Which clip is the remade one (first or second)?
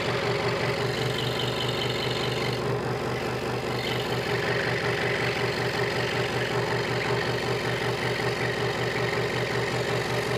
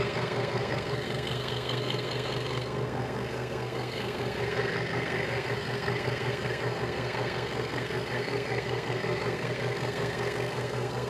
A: second